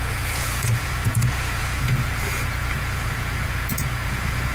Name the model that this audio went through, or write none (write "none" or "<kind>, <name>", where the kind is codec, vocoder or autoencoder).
vocoder, Vocos